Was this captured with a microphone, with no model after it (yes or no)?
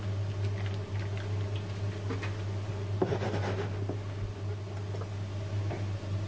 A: yes